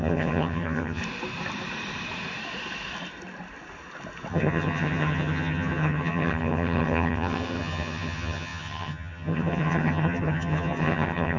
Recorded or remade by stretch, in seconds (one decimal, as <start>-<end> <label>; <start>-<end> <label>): 0.0-1.0 remade; 1.0-4.3 recorded; 4.3-11.4 remade